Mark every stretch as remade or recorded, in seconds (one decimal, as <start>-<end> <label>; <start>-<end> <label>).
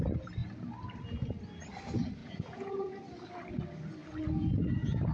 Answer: 0.0-2.2 recorded; 2.2-3.0 remade; 3.0-5.1 recorded